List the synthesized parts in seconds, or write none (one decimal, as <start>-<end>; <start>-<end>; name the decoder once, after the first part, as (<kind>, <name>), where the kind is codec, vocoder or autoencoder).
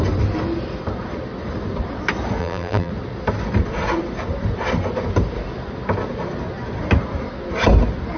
2.4-2.9 (vocoder, BigVGAN v2)